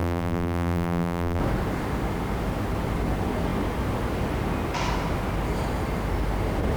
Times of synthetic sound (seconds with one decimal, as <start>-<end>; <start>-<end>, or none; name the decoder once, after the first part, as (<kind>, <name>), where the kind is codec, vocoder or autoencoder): 0.0-1.4 (vocoder, BigVGAN v2)